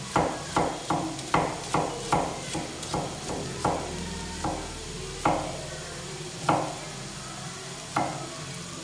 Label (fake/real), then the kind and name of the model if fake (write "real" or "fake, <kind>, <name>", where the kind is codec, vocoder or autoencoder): real